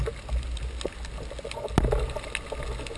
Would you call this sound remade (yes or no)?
no